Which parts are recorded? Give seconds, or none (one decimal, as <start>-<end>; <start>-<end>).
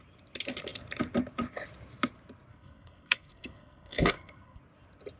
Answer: 0.0-2.5; 4.6-5.2